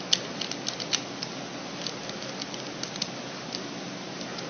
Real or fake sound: real